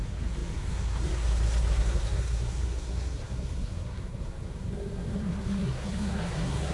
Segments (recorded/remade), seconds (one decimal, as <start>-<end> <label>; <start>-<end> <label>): 0.0-6.7 remade